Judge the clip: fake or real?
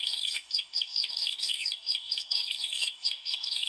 fake